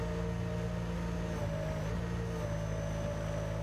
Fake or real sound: real